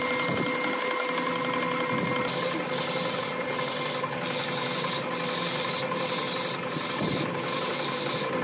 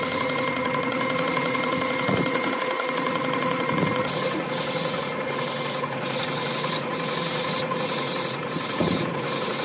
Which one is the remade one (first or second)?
second